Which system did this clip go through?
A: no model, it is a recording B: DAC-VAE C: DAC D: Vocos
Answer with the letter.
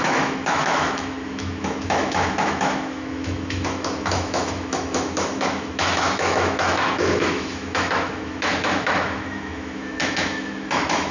B